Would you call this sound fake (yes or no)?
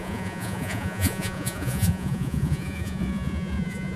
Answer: yes